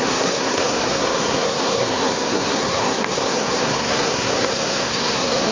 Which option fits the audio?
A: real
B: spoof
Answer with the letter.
B